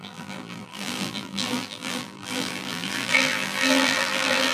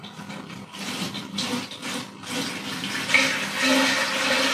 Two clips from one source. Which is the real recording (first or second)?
second